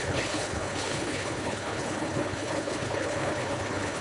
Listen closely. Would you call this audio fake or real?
fake